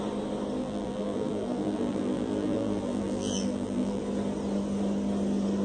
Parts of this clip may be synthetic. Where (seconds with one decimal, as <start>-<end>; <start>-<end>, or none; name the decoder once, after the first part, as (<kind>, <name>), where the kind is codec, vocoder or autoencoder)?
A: 0.6-4.0 (vocoder, BigVGAN v2)